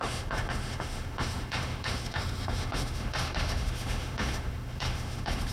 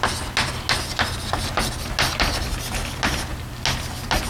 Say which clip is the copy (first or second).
first